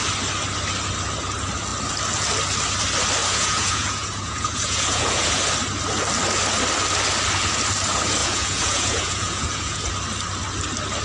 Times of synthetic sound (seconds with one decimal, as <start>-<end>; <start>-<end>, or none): 3.2-5.4; 8.2-9.9